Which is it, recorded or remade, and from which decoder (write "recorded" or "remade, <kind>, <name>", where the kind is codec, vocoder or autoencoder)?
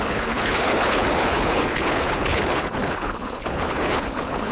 remade, codec, HILCodec